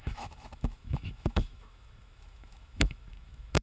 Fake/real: fake